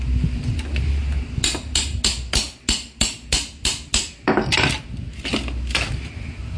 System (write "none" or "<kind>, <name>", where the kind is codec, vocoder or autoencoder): none